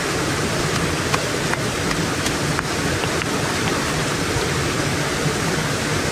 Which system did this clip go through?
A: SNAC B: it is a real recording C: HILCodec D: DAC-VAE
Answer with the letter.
B